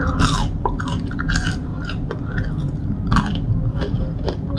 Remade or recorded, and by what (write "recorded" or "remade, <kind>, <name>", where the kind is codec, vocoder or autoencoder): recorded